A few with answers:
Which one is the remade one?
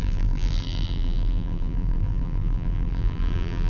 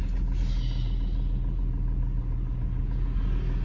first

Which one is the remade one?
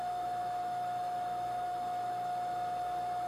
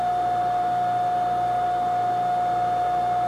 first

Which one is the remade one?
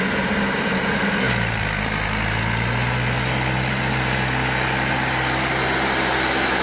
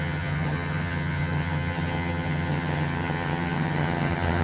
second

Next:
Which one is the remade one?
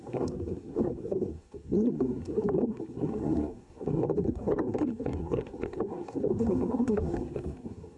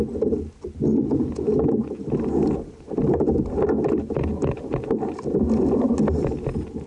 first